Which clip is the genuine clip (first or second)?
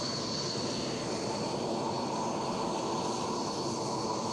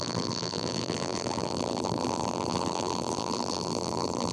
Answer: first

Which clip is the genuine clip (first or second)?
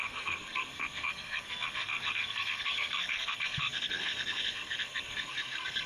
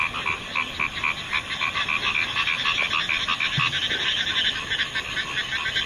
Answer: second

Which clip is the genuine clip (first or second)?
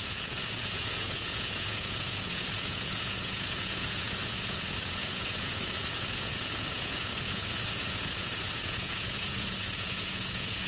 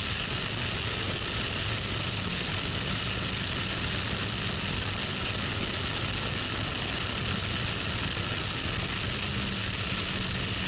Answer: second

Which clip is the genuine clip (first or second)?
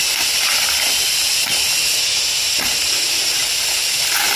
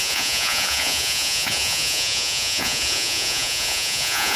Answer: first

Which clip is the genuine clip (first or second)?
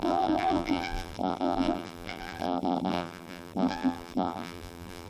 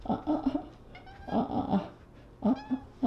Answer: second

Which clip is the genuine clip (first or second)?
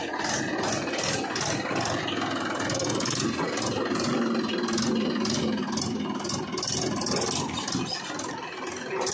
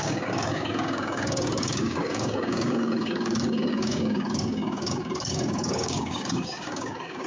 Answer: first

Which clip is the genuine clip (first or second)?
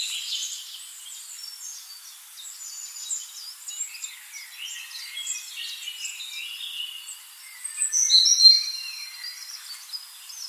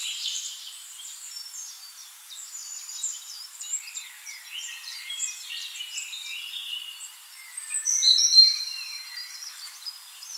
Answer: first